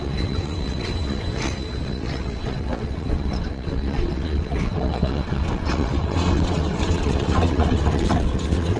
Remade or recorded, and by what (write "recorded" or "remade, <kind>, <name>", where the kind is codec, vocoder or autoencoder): remade, vocoder, WaveNeXt